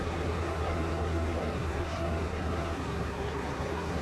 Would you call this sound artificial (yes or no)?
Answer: yes